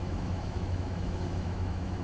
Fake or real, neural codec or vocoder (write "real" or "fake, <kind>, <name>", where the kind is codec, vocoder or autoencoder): fake, autoencoder, DAC-VAE